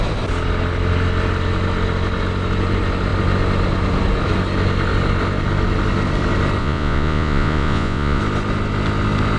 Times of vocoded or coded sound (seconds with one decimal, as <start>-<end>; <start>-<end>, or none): 6.6-8.2

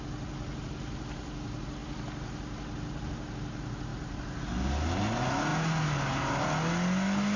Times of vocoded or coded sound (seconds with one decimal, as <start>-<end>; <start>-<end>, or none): none

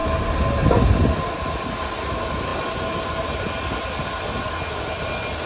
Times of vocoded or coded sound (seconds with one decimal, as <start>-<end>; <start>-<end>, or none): none

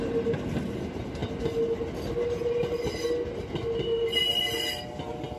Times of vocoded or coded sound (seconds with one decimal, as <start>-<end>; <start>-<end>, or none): none

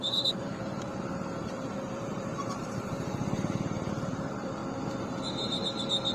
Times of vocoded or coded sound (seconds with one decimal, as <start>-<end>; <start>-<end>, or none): 0.0-0.9; 1.4-4.6

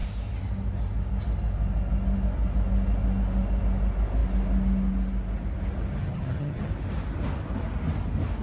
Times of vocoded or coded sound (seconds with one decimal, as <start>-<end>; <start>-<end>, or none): 6.0-6.7

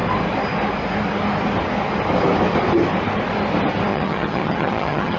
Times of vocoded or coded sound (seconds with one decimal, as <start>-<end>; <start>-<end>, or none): 3.9-5.2